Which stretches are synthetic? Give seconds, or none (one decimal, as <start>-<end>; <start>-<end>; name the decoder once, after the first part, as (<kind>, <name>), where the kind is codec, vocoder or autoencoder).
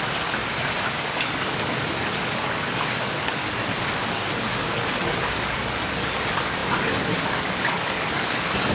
0.0-0.4 (codec, DAC); 0.9-3.4; 4.1-8.7